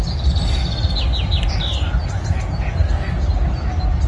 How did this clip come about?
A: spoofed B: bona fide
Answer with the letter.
B